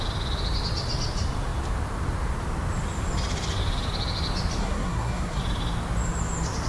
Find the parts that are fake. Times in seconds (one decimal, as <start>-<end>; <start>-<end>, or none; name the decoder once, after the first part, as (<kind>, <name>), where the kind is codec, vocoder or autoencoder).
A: 4.6-5.4 (codec, SNAC)